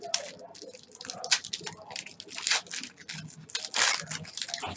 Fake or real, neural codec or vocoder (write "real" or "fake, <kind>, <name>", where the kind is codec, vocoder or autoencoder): real